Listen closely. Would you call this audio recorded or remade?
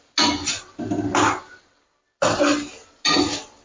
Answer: recorded